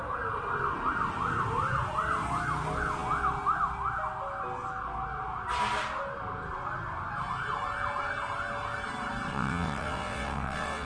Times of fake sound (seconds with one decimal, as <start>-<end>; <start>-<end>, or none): 9.3-10.9